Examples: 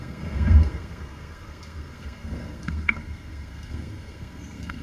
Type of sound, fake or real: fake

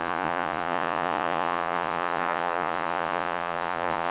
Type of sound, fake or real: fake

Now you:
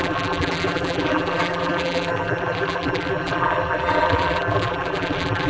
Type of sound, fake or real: fake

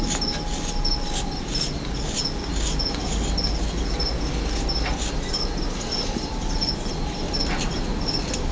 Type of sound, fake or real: real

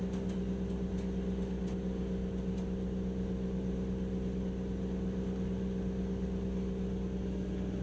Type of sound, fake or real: real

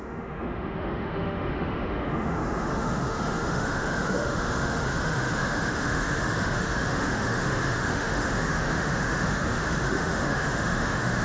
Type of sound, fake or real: fake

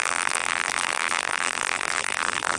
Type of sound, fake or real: fake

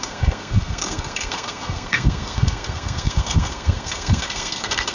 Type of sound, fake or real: fake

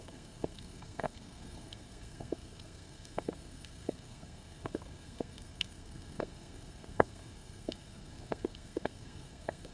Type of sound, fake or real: fake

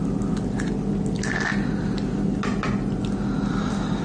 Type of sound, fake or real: real